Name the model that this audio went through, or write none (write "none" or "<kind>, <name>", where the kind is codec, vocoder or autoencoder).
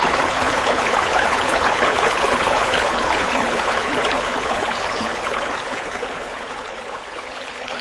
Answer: codec, HILCodec